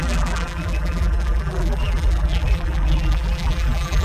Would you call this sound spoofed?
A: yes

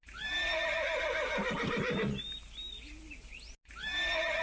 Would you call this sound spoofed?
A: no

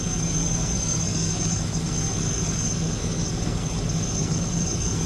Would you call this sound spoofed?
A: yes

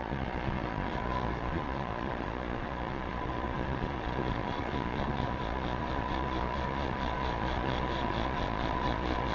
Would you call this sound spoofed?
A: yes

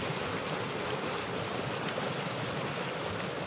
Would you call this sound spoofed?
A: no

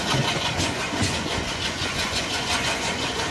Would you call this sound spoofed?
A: yes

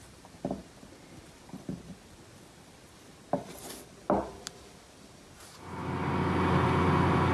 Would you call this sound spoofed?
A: no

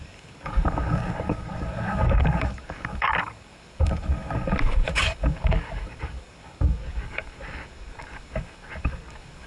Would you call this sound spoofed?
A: yes